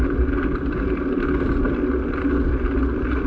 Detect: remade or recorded recorded